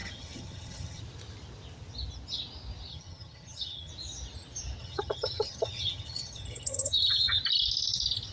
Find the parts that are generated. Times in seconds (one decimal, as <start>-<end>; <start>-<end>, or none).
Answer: 0.0-1.0; 2.9-3.9; 4.8-7.4